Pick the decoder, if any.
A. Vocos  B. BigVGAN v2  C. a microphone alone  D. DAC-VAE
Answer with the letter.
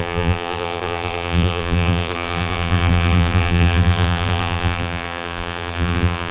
B